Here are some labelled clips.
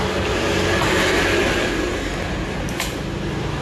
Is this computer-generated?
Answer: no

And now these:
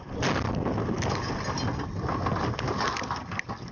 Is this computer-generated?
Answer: no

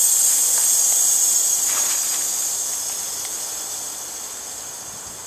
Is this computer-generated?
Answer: no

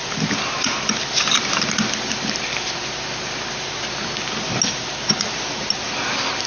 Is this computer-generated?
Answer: no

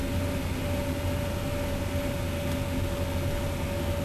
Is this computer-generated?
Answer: no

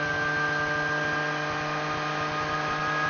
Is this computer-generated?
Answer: no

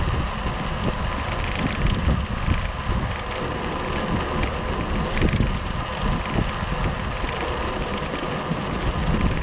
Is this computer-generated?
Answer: no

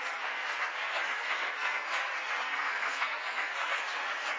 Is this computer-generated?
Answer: yes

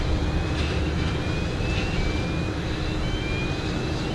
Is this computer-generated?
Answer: no